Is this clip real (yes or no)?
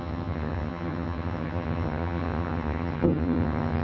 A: no